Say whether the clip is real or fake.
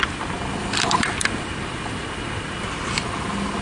real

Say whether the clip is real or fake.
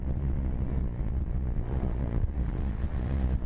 fake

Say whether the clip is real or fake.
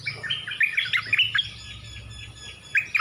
real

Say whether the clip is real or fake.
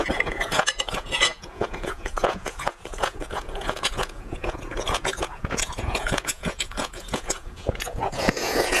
fake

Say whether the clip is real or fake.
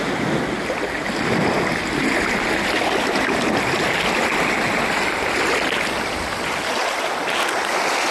real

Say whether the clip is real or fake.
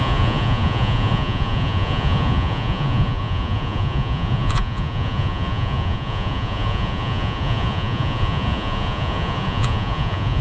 fake